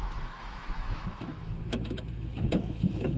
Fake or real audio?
fake